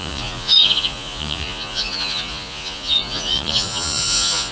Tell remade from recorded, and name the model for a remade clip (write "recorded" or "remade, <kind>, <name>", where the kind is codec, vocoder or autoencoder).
remade, vocoder, Vocos